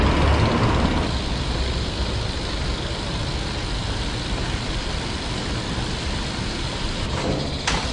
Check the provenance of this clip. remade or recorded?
recorded